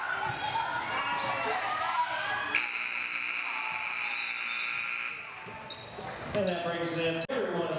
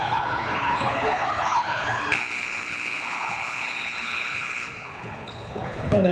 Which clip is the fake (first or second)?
second